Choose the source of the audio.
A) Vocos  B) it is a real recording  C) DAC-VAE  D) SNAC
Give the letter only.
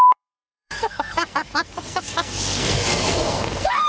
D